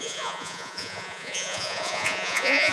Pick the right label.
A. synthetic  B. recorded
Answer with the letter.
A